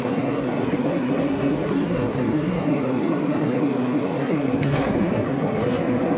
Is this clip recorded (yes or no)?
no